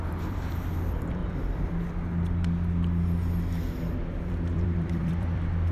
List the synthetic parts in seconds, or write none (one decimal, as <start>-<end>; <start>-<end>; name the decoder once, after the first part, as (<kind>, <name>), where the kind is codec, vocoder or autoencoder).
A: 0.0-1.2 (vocoder, BigVGAN v2); 4.2-5.7